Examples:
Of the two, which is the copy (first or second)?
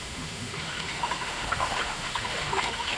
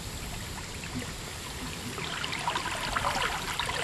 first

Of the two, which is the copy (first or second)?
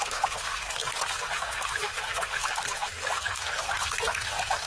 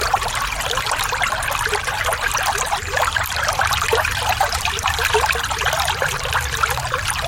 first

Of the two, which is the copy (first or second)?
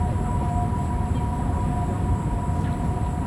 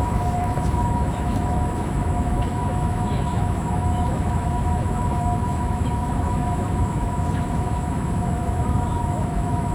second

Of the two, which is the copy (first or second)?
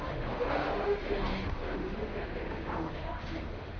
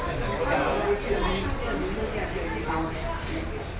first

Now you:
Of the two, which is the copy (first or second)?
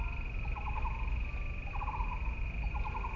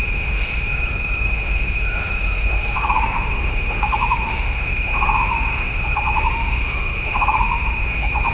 second